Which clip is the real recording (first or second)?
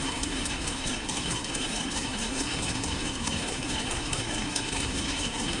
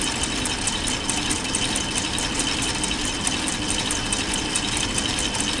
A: second